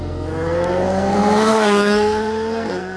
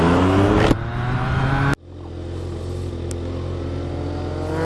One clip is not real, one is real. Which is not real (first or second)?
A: first